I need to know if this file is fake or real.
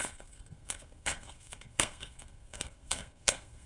fake